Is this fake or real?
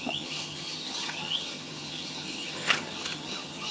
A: fake